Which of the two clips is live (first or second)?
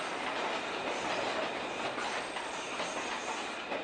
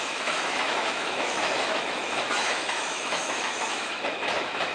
first